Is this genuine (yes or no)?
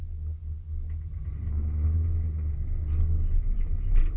yes